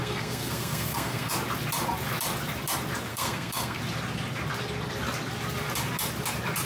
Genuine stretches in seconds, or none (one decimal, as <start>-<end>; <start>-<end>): 1.3-3.1; 3.8-6.7